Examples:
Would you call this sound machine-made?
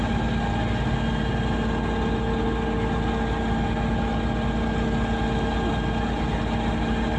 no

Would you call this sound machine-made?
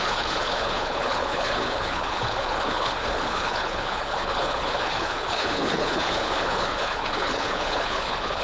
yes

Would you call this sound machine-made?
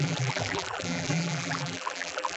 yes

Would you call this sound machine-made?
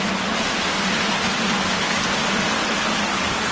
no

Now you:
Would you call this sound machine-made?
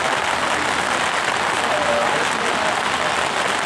no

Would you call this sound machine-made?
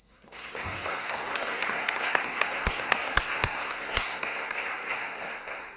yes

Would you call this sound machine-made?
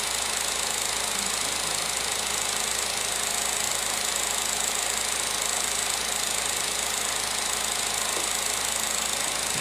no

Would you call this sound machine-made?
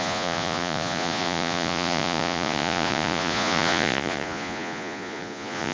yes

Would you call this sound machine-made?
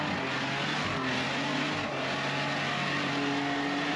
no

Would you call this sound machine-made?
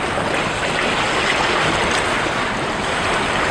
no